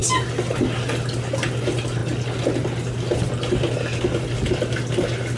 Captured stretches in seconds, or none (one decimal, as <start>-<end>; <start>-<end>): 0.0-5.4

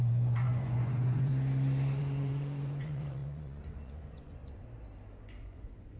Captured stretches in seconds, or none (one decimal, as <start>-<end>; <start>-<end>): 1.3-2.0; 4.4-5.2

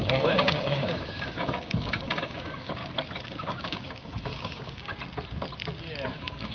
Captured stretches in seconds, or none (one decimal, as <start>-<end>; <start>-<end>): 2.8-3.4; 4.9-6.1

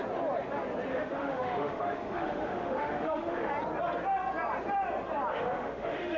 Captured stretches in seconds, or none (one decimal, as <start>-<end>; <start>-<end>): 0.0-0.9; 3.5-5.3

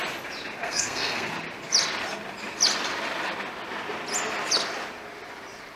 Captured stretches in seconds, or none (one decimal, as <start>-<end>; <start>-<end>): 0.0-0.6; 1.3-5.8